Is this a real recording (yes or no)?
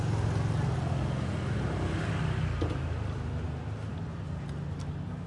yes